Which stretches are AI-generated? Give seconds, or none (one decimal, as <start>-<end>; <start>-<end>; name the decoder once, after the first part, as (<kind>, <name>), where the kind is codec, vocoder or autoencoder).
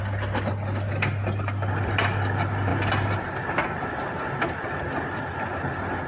none